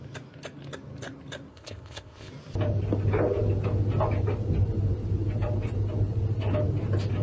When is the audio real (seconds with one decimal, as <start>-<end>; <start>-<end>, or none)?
0.0-1.5; 2.3-7.2